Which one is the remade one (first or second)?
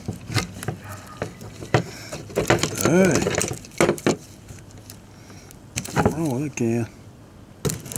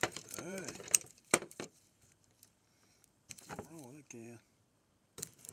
second